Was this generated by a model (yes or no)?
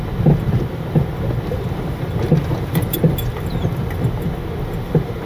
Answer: no